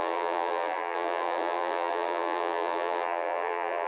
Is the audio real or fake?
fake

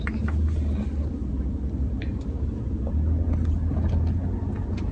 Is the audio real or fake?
real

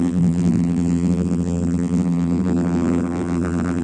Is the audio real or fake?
fake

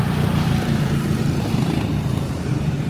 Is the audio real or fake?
fake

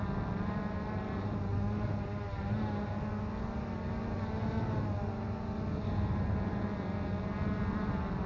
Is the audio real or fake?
real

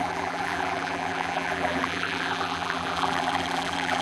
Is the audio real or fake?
fake